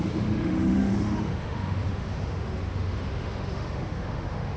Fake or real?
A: fake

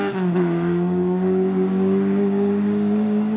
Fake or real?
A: fake